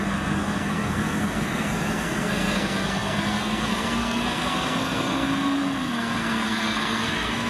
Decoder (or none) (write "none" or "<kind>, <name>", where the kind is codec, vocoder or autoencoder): codec, SNAC